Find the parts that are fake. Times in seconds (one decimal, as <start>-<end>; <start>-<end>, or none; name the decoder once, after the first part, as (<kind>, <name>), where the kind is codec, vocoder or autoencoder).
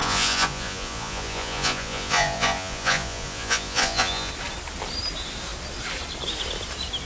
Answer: 0.0-4.3 (vocoder, Vocos)